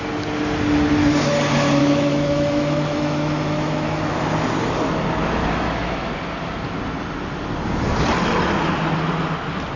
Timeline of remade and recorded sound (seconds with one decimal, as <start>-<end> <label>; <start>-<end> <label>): 0.0-1.8 recorded; 1.8-4.2 remade; 4.2-5.4 recorded; 5.4-6.1 remade; 6.1-9.8 recorded

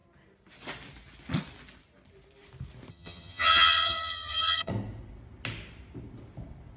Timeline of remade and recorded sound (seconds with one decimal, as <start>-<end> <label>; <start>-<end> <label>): 0.0-2.9 recorded; 2.9-4.7 remade; 4.7-6.8 recorded

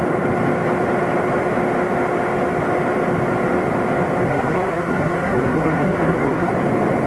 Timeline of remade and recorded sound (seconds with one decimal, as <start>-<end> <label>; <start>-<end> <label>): 0.0-4.3 recorded; 4.3-6.5 remade; 6.5-7.1 recorded

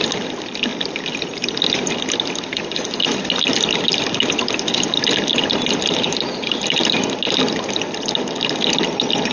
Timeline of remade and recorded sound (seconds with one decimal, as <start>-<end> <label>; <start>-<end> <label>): 0.0-9.3 recorded

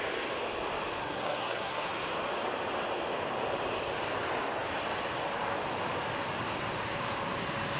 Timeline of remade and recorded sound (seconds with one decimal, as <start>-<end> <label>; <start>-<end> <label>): 0.0-1.0 recorded; 1.0-1.9 remade; 1.9-7.8 recorded

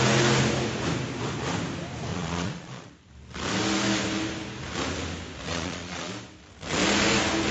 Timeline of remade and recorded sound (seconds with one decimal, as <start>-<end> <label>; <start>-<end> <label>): 0.0-2.1 recorded; 2.1-2.9 remade; 2.9-5.5 recorded; 5.5-6.1 remade; 6.1-7.5 recorded

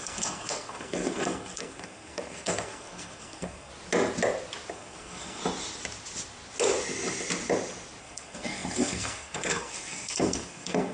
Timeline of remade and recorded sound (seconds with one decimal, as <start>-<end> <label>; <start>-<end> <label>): 0.0-3.7 remade; 3.7-4.7 recorded; 4.7-5.4 remade; 5.4-8.0 recorded; 8.0-10.9 remade

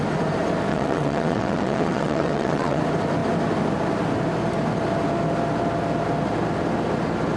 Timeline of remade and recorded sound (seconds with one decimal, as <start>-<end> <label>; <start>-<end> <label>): 0.0-0.7 recorded; 0.7-2.8 remade; 2.8-7.4 recorded